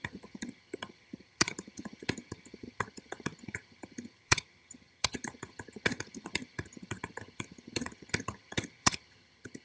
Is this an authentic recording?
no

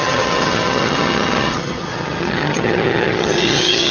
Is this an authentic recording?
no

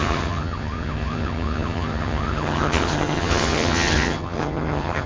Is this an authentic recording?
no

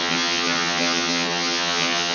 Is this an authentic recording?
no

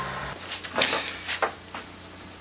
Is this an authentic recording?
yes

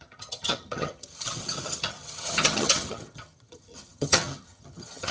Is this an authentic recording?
no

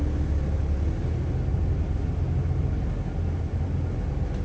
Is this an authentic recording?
yes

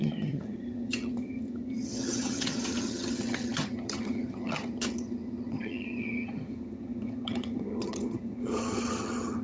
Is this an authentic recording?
no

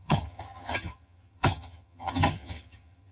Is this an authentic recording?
no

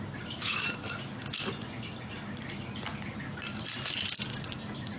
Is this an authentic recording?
yes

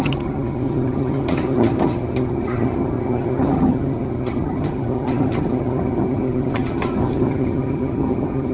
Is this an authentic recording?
no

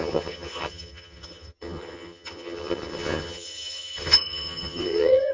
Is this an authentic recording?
no